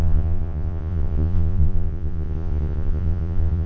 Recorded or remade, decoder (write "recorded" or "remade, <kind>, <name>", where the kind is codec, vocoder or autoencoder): remade, vocoder, Vocos